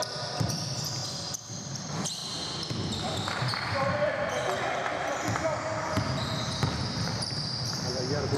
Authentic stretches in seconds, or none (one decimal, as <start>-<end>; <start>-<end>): 1.0-1.5; 2.2-5.8